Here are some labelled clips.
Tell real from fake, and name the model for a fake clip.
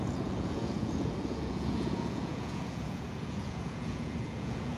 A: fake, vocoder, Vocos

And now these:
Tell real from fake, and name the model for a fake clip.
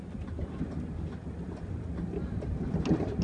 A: real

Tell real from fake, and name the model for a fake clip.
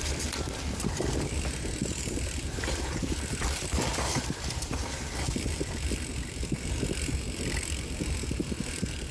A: fake, vocoder, BigVGAN v2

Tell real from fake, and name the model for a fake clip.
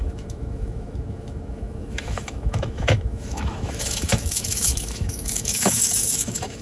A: fake, autoencoder, DAC-VAE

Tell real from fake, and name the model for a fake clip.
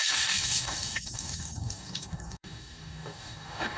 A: fake, codec, DAC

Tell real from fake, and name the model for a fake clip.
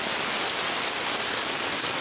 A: real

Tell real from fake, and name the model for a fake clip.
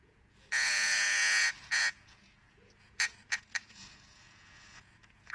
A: fake, vocoder, Vocos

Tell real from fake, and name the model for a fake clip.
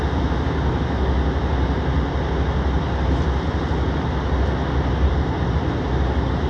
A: real